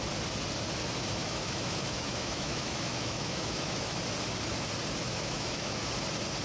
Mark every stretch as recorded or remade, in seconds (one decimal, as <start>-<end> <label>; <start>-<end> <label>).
0.0-1.2 recorded; 1.2-4.0 remade; 4.0-5.0 recorded; 5.0-5.8 remade; 5.8-6.4 recorded